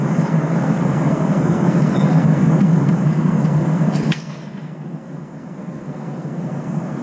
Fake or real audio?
fake